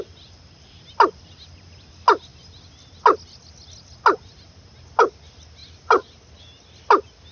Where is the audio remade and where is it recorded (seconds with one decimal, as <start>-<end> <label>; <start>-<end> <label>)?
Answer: 0.0-7.3 recorded